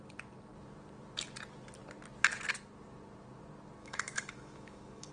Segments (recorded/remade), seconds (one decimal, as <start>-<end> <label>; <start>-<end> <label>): 0.0-3.8 recorded; 3.8-5.1 remade